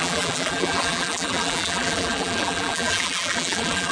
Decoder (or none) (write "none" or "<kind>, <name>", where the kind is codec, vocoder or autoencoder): vocoder, BigVGAN v2